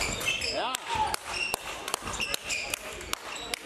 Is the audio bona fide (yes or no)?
yes